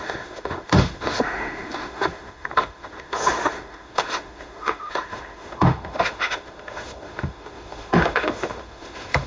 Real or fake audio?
fake